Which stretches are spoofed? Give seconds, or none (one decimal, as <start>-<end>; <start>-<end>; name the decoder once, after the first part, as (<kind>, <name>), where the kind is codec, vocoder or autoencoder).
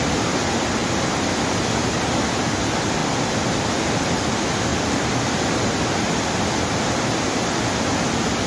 0.8-1.9 (vocoder, BigVGAN v2); 4.7-5.4